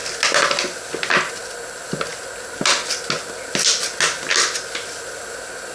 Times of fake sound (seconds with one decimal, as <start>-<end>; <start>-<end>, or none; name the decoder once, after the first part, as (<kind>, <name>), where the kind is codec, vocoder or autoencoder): none